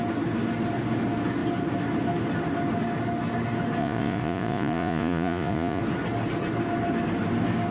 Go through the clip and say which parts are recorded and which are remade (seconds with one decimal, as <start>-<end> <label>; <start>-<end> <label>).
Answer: 0.0-3.8 recorded; 3.8-5.8 remade; 5.8-7.7 recorded